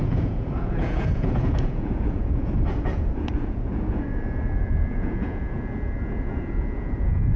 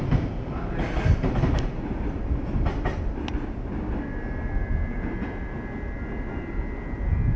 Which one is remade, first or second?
first